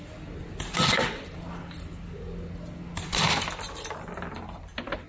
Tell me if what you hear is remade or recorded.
recorded